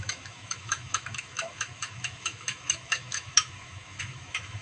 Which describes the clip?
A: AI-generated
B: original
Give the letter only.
A